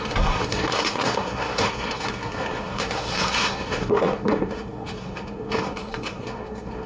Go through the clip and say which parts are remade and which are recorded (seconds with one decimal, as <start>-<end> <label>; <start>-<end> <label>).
0.0-6.9 remade